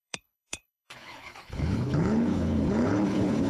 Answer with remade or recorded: remade